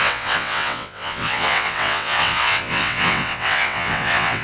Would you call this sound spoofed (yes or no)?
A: yes